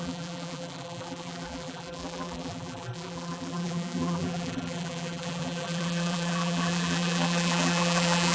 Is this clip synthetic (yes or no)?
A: yes